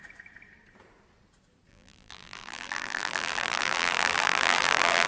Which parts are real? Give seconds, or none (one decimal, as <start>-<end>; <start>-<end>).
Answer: 0.0-1.7